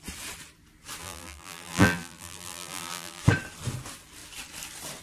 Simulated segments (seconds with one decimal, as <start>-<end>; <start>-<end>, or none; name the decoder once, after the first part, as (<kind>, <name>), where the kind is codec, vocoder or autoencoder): 1.0-3.2 (vocoder, BigVGAN v2)